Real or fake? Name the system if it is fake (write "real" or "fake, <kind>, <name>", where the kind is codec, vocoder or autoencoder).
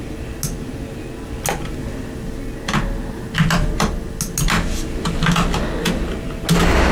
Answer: real